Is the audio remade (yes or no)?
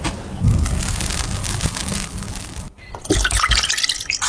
no